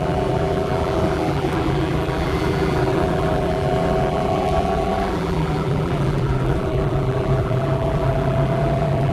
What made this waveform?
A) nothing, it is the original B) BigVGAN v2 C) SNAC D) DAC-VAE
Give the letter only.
B